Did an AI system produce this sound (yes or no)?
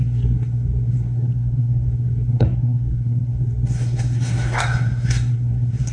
yes